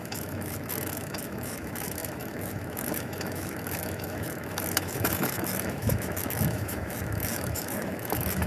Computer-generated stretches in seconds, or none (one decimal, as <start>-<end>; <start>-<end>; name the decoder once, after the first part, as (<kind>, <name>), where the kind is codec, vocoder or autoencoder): 0.0-8.5 (autoencoder, DAC-VAE)